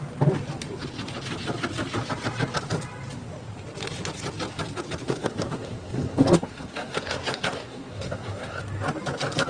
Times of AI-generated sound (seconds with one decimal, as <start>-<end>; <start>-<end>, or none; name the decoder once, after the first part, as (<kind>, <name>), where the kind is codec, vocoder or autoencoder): 5.0-8.6 (codec, SNAC)